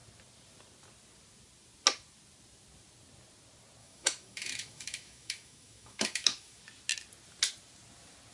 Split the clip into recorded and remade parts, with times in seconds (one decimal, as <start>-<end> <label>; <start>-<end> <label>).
0.0-3.8 recorded; 3.8-6.6 remade; 6.6-8.3 recorded